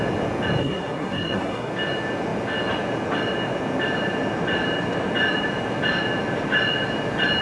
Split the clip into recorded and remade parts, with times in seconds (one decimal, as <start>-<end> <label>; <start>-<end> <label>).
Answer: 0.0-0.6 recorded; 0.6-1.7 remade; 1.7-7.4 recorded